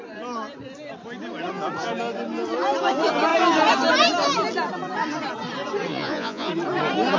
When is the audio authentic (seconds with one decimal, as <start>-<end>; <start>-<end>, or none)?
0.0-5.9; 6.5-7.2